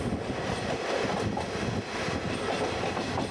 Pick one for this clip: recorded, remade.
recorded